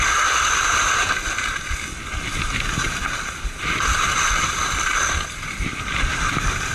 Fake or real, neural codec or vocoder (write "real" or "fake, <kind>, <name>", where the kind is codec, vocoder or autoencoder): real